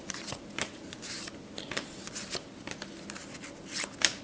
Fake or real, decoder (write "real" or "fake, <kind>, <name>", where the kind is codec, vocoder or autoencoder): real